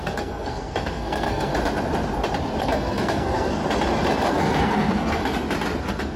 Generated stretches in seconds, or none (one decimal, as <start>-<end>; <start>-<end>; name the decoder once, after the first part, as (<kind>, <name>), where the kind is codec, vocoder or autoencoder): 0.0-1.5 (codec, SNAC); 2.6-3.6; 4.3-5.2; 5.8-6.2